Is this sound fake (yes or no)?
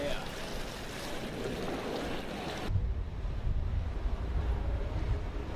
no